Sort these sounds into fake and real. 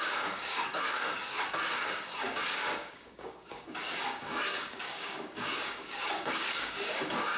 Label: fake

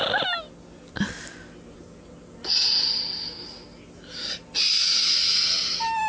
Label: real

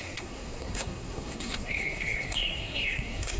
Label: fake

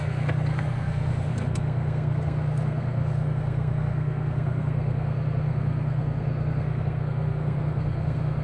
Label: fake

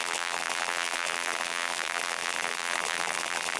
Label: fake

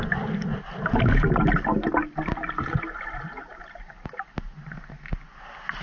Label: real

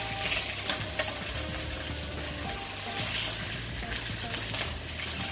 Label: real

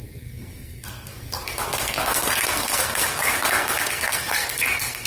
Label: fake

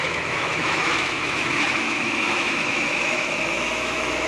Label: fake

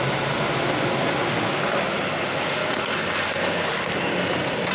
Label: real